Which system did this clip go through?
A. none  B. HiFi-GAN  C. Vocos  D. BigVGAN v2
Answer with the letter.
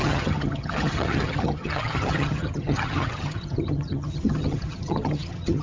B